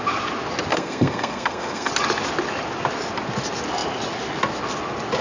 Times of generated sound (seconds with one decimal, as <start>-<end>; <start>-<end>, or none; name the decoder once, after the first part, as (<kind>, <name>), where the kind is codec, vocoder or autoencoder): 0.7-1.9 (codec, SNAC)